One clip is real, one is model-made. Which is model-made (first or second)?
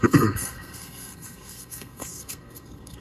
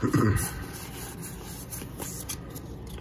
first